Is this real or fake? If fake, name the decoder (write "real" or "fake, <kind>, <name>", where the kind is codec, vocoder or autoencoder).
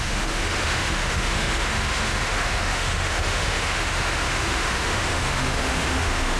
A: fake, autoencoder, DAC-VAE